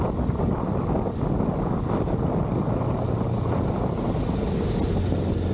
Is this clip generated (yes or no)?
no